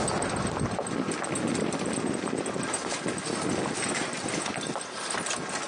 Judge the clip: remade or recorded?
recorded